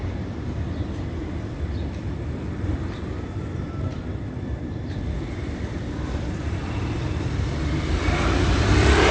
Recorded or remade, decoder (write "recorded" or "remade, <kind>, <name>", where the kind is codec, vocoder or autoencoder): remade, vocoder, BigVGAN v2